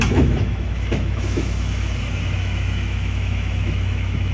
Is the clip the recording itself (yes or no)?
no